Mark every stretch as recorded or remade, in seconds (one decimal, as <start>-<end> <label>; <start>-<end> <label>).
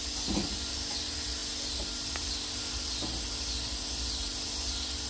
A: 0.0-5.1 recorded